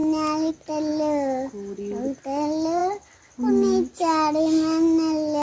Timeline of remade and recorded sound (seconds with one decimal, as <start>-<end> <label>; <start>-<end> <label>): 0.0-5.4 recorded